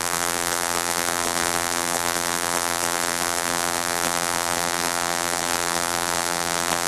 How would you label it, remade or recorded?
remade